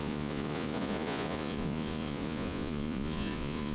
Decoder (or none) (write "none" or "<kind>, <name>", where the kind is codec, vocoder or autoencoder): vocoder, Vocos